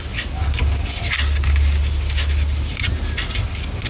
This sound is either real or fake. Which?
real